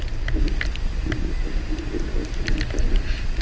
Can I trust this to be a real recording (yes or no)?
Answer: yes